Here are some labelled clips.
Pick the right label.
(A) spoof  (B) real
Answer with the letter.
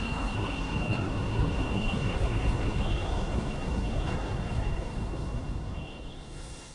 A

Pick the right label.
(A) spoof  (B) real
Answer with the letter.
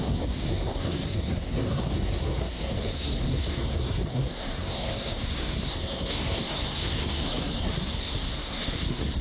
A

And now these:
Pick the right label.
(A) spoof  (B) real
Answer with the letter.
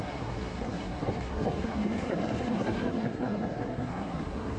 A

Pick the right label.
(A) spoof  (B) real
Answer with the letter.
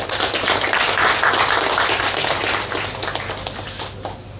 B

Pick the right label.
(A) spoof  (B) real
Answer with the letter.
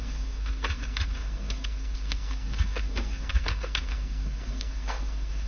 A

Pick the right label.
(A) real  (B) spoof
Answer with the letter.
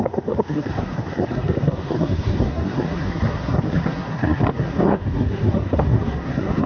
B